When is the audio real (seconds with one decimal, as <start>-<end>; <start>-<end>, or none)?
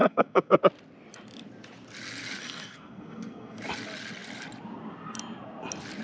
0.6-2.4; 3.6-6.0